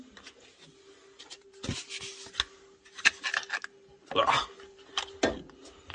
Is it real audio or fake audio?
real